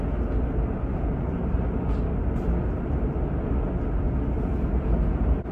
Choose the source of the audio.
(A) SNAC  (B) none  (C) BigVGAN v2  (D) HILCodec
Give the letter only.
B